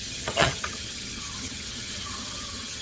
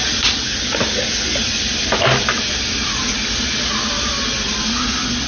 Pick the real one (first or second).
second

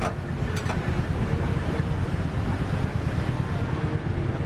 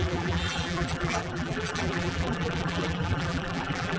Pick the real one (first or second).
first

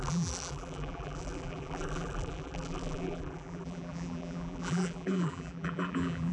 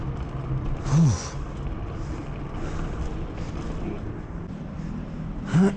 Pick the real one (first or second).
second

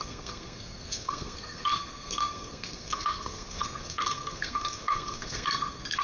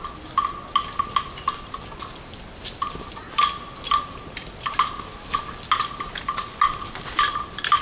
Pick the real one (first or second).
second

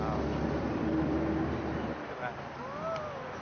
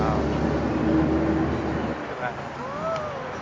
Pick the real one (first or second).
second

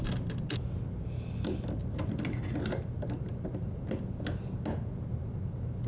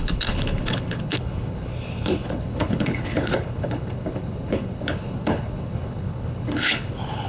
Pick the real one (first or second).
first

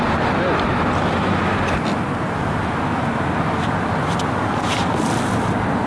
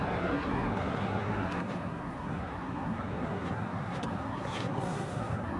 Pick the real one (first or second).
first